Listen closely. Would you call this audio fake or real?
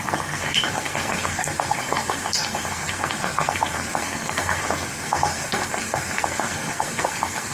fake